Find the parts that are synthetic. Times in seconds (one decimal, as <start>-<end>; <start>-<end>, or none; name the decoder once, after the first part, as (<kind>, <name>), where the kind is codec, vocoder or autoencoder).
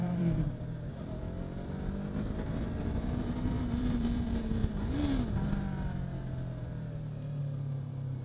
0.0-0.9 (vocoder, BigVGAN v2); 2.8-4.6; 7.4-8.2